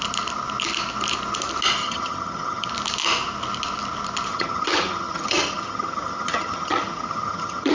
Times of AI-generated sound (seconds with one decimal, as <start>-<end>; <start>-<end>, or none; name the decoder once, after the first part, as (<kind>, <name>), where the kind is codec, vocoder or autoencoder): 1.8-2.7 (vocoder, HiFi-GAN); 4.3-7.7